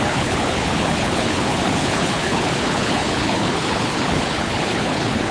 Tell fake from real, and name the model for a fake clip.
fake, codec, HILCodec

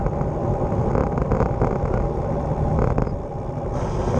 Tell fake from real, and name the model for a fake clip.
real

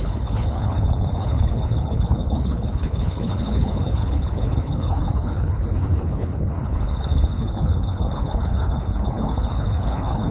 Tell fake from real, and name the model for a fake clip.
fake, codec, HILCodec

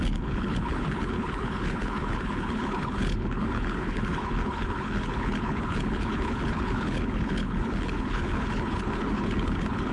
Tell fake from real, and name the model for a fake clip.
fake, codec, HILCodec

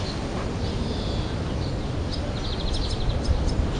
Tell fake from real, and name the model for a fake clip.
real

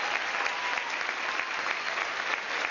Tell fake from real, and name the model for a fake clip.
real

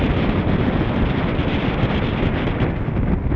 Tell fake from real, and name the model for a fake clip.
real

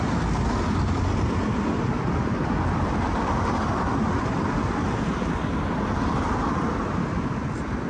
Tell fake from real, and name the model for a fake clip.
real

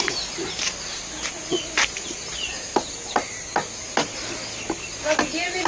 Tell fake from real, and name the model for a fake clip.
real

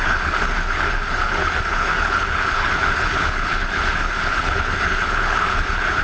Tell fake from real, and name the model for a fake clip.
fake, codec, HILCodec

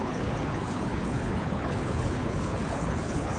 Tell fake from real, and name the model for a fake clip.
fake, codec, HILCodec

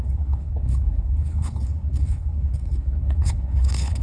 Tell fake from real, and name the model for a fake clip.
fake, codec, HILCodec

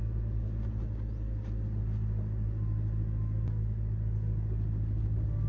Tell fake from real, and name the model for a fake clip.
real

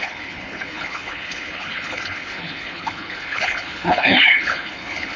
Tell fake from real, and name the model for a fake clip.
fake, codec, HILCodec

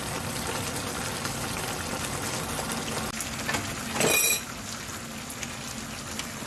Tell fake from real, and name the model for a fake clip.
real